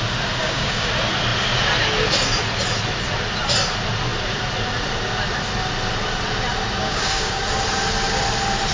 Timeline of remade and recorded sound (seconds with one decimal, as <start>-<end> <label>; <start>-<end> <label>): 0.0-0.4 recorded; 0.4-0.9 remade; 0.9-6.8 recorded; 6.8-7.4 remade; 7.4-8.7 recorded

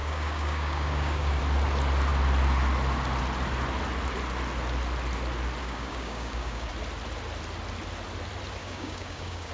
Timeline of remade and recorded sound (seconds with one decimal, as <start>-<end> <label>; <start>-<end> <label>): 0.0-1.4 remade; 1.4-5.6 recorded; 5.6-6.7 remade; 6.7-8.6 recorded; 8.6-9.5 remade

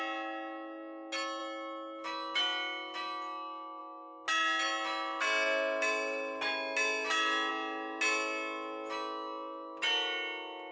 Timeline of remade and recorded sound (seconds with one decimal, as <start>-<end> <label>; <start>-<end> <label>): 0.0-10.7 recorded

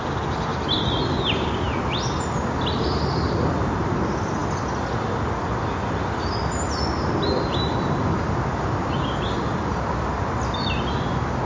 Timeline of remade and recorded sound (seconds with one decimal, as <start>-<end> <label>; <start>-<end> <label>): 0.0-11.5 recorded

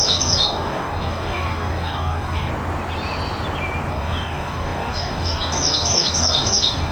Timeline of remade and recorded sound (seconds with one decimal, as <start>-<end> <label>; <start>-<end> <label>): 0.0-2.5 remade; 2.5-3.9 recorded; 3.9-6.9 remade

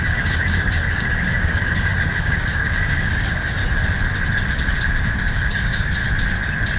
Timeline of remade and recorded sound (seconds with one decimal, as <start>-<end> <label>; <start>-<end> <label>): 0.0-3.6 remade; 3.6-4.9 recorded; 4.9-6.0 remade; 6.0-6.8 recorded

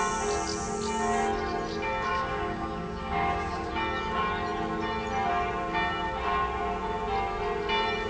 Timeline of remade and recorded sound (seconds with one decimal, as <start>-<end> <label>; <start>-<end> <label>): 0.0-2.1 recorded; 2.1-3.7 remade; 3.7-8.1 recorded